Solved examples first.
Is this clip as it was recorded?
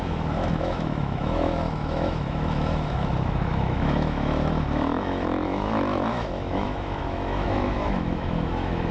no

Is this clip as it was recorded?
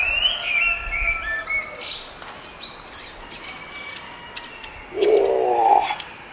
yes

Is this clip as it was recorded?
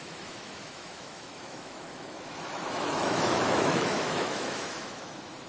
no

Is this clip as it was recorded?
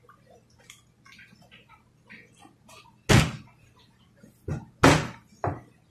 yes